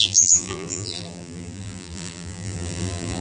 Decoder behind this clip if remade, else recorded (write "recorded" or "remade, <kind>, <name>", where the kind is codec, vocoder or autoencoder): remade, vocoder, BigVGAN v2